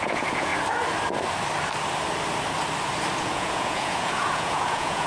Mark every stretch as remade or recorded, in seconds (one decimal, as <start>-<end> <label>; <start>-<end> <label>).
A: 0.0-0.5 remade; 0.5-3.2 recorded; 3.2-5.1 remade